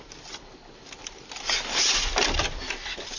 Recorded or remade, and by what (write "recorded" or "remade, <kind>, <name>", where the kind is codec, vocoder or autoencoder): recorded